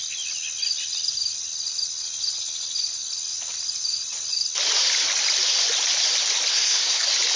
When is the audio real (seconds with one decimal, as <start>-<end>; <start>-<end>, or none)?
0.0-6.5; 7.0-7.4